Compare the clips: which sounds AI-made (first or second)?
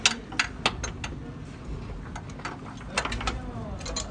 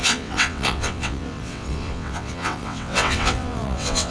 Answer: second